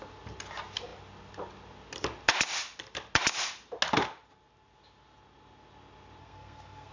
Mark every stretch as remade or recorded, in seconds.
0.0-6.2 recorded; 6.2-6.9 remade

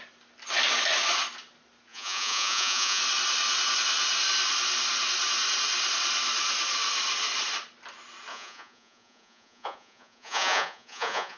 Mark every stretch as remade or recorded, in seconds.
0.0-1.9 recorded; 1.9-3.0 remade; 3.0-8.3 recorded; 8.3-11.4 remade

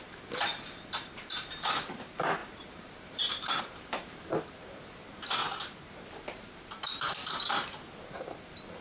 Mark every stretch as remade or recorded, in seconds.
0.0-0.5 remade; 0.5-1.1 recorded; 1.1-8.8 remade

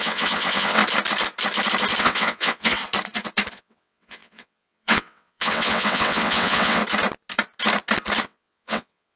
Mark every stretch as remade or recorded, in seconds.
0.0-0.8 remade; 0.8-2.0 recorded; 2.0-2.8 remade; 2.8-3.5 recorded; 3.5-6.8 remade; 6.8-8.2 recorded; 8.2-9.2 remade

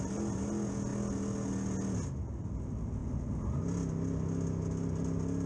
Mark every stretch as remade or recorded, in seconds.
0.0-5.5 recorded